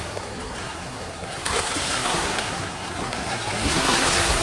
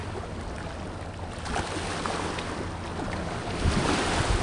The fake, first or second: first